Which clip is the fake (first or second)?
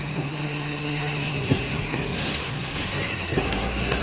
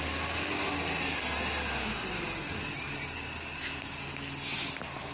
first